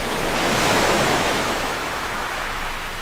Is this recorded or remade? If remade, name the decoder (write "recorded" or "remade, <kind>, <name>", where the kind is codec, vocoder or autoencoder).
remade, autoencoder, DAC-VAE